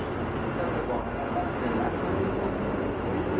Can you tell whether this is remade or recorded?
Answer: recorded